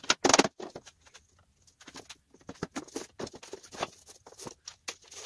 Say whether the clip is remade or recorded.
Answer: recorded